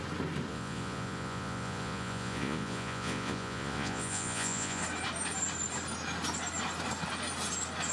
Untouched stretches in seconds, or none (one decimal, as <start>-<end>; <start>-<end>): 0.0-0.5; 4.8-7.9